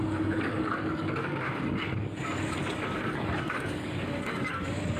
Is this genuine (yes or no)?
no